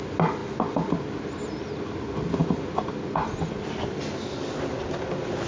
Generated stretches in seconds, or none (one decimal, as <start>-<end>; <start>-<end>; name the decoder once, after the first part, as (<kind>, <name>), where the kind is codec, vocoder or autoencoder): none